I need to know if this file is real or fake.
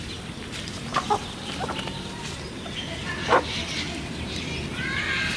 real